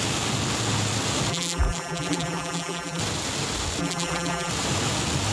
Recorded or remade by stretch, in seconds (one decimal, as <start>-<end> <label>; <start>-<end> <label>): 0.0-1.3 recorded; 1.3-3.0 remade; 3.0-3.8 recorded; 3.8-4.5 remade; 4.5-5.3 recorded